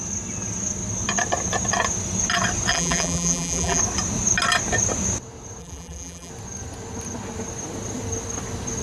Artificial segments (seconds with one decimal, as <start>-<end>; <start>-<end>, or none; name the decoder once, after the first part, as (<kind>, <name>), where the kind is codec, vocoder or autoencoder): 2.7-3.8 (vocoder, BigVGAN v2); 5.6-6.3